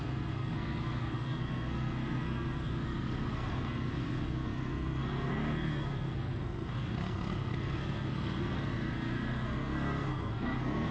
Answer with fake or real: fake